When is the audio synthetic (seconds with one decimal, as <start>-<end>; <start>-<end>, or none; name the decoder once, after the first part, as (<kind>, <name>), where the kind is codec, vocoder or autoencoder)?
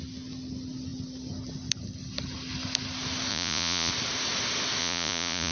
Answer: 3.3-3.9 (vocoder, Vocos); 4.8-5.5